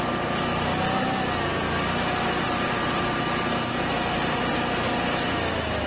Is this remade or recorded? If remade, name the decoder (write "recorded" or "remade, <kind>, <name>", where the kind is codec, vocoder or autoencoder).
recorded